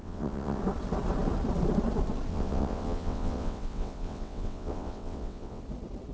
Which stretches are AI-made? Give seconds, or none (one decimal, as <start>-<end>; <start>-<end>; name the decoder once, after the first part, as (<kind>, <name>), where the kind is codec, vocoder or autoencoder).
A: 0.0-0.6 (vocoder, WaveNeXt); 2.3-5.6